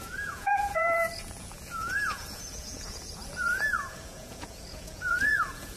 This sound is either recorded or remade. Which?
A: remade